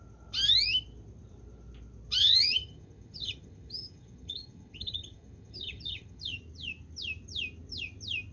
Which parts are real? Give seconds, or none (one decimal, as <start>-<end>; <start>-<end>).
0.0-2.2; 6.4-8.3